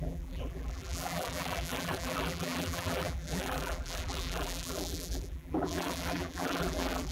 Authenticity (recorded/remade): remade